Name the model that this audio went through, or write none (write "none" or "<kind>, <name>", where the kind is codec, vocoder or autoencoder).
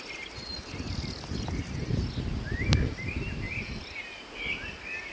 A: none